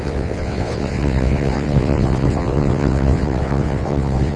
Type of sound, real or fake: fake